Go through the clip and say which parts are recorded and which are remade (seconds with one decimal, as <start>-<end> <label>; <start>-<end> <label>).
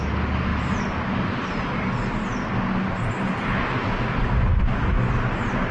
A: 0.0-0.5 recorded; 0.5-1.9 remade; 1.9-5.7 recorded